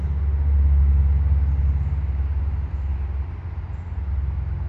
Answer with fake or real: real